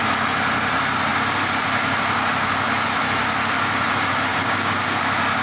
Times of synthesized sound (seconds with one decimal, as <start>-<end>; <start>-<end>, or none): 4.3-5.0